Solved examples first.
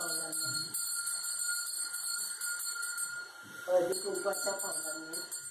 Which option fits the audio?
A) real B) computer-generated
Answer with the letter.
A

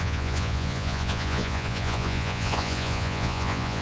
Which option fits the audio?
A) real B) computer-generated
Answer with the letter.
B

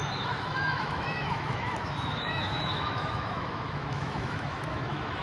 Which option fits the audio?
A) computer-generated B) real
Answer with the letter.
A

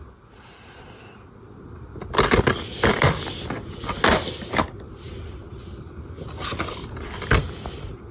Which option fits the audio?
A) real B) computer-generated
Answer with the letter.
A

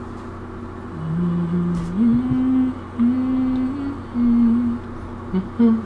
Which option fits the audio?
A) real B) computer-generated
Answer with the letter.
A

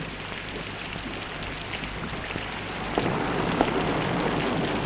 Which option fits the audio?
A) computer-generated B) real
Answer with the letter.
B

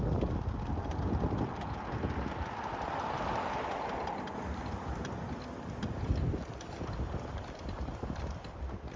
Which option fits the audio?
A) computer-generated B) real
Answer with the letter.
B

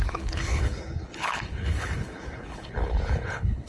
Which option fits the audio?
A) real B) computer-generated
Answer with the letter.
B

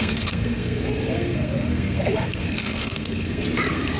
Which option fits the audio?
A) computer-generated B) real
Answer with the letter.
A